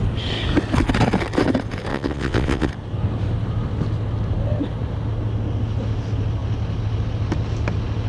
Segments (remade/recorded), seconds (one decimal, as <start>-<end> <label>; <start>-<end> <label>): 0.0-1.9 recorded; 1.9-2.7 remade; 2.7-8.1 recorded